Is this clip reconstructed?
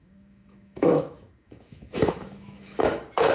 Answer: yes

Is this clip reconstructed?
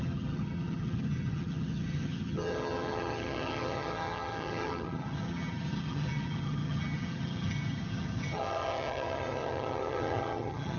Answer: yes